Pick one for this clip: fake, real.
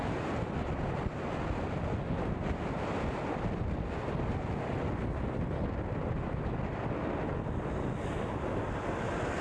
real